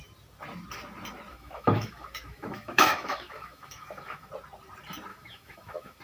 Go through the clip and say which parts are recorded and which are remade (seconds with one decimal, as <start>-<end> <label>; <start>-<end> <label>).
0.0-1.3 recorded; 1.3-4.3 remade; 4.3-5.1 recorded; 5.1-6.0 remade

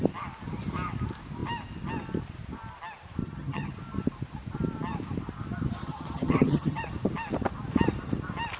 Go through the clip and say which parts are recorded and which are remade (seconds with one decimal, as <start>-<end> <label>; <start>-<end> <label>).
0.0-3.2 recorded; 3.2-3.7 remade; 3.7-5.8 recorded; 5.8-6.8 remade; 6.8-8.6 recorded

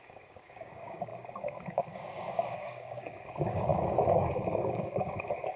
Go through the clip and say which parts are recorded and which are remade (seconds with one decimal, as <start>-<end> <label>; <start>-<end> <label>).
0.0-5.6 remade

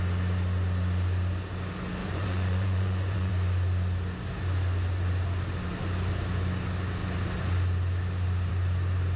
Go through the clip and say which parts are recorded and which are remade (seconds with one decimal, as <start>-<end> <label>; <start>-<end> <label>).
0.0-2.0 recorded; 2.0-3.3 remade; 3.3-9.2 recorded

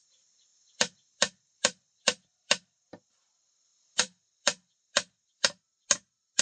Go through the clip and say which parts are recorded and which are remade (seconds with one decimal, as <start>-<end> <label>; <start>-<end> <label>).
0.0-0.5 recorded; 0.5-3.1 remade; 3.1-3.7 recorded; 3.7-5.6 remade; 5.6-6.4 recorded

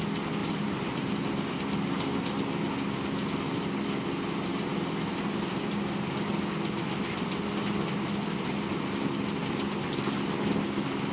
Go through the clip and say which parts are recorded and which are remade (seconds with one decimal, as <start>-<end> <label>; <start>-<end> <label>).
0.0-0.4 recorded; 0.4-1.1 remade; 1.1-11.1 recorded

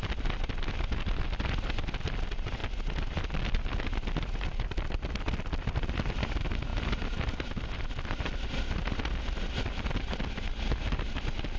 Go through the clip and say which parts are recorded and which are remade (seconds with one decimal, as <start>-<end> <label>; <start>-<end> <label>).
0.0-2.6 recorded; 2.6-5.9 remade; 5.9-11.6 recorded

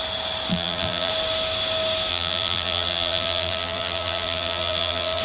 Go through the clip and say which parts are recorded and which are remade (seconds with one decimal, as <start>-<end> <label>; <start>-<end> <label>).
0.0-0.5 recorded; 0.5-1.1 remade; 1.1-2.1 recorded; 2.1-5.2 remade